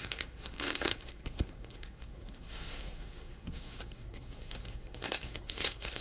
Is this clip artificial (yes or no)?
yes